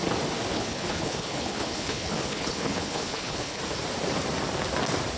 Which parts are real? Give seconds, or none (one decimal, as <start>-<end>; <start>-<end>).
0.0-0.5; 3.6-5.2